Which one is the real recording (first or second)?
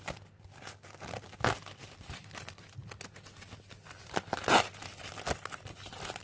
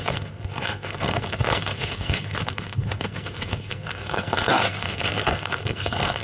first